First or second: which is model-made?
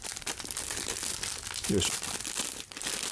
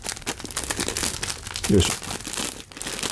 first